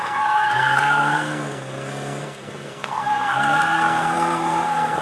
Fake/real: fake